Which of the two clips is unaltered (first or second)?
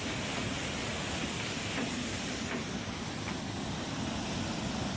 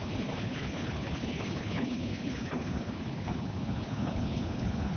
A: first